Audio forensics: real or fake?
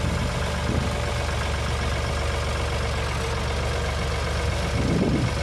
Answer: real